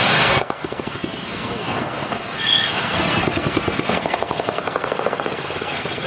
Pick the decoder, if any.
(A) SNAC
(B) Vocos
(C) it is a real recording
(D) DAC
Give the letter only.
A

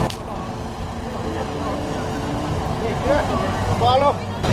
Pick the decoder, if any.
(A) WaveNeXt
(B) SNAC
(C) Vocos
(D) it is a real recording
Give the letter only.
D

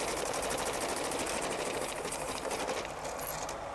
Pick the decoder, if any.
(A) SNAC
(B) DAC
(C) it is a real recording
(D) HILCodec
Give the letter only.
C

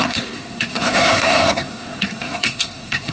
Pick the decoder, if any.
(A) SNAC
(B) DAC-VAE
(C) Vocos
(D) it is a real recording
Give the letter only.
A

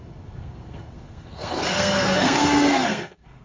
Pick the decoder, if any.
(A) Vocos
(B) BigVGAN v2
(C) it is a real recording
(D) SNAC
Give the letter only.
D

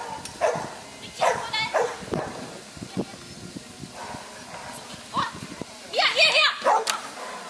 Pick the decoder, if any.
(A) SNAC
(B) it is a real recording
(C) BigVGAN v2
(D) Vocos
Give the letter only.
B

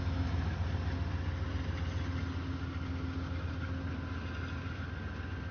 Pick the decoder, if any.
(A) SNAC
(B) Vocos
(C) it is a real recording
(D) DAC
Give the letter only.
C